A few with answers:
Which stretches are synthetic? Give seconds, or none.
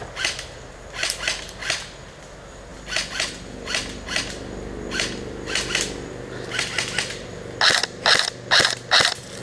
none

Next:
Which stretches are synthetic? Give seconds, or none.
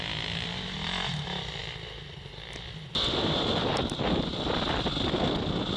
none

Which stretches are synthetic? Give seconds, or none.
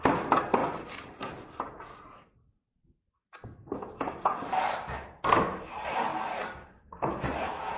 none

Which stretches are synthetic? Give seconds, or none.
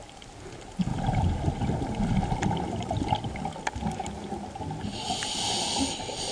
none